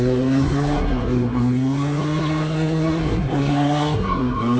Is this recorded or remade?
remade